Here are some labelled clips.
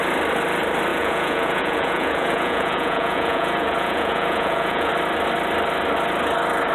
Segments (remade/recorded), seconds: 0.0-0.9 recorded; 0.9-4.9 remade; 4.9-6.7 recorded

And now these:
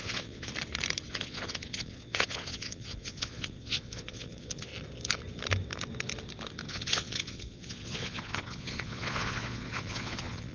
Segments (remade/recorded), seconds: 0.0-0.5 remade; 0.5-1.1 recorded; 1.1-4.7 remade; 4.7-6.7 recorded; 6.7-10.5 remade

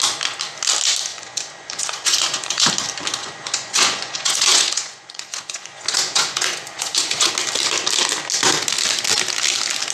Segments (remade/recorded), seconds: 0.0-1.1 recorded; 1.1-2.7 remade; 2.7-3.2 recorded; 3.2-7.3 remade; 7.3-9.9 recorded

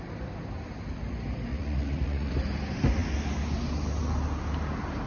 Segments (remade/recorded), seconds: 0.0-1.5 recorded; 1.5-2.3 remade; 2.3-5.1 recorded

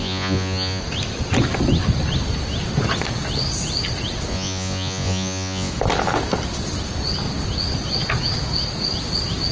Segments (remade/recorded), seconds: 0.0-0.8 remade; 0.8-4.3 recorded; 4.3-5.7 remade; 5.7-9.5 recorded

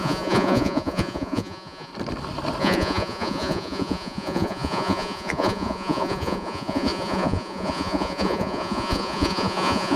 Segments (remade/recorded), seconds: 0.0-1.9 remade; 1.9-2.6 recorded; 2.6-10.0 remade